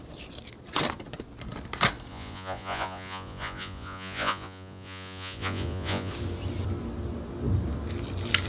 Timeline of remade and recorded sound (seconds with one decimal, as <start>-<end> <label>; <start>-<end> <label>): 0.0-2.1 recorded; 2.1-6.1 remade; 6.1-8.5 recorded